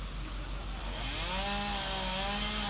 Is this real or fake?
real